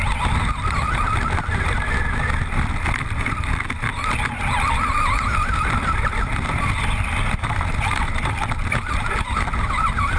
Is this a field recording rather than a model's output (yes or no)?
yes